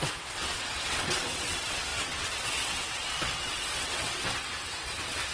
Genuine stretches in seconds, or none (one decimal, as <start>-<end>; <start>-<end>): none